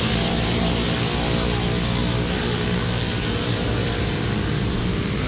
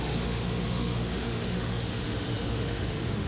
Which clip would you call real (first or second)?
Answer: first